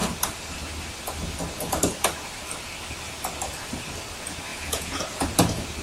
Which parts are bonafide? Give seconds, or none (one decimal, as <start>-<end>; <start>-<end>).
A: 0.0-4.5; 5.0-5.8